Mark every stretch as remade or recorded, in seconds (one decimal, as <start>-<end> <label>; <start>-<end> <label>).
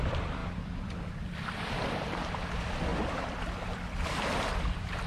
0.0-5.1 remade